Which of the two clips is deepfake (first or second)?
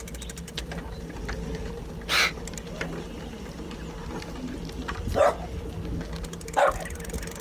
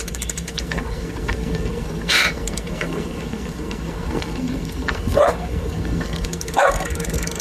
second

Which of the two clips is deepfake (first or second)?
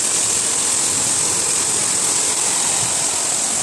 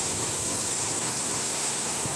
second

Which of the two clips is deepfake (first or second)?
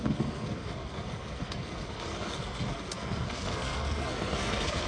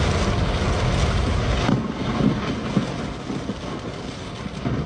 first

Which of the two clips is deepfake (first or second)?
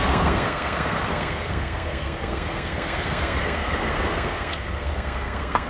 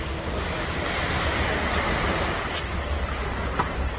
first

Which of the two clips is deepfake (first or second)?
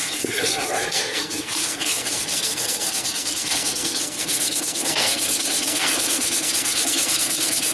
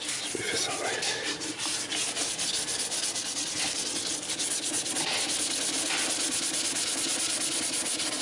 first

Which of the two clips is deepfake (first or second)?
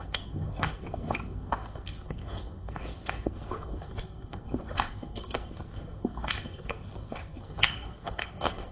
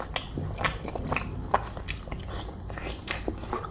first